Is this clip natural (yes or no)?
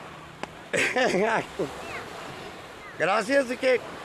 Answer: yes